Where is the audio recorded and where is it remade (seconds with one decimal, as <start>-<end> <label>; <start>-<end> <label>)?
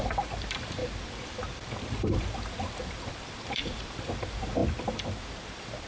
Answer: 0.0-4.6 remade; 4.6-5.2 recorded; 5.2-5.9 remade